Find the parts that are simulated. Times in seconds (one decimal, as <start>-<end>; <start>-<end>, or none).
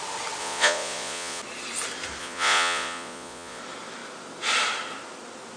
0.4-1.4; 2.2-3.6